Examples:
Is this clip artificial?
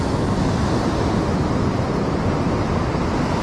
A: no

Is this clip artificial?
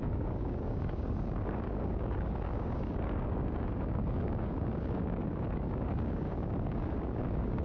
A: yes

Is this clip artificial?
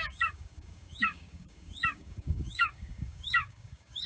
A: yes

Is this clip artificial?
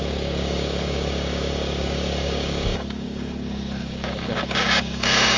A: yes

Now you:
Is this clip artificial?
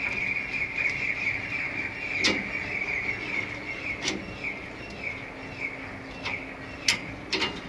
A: no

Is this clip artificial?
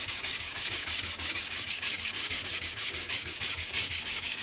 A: yes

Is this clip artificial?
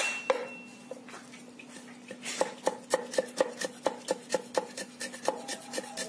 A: no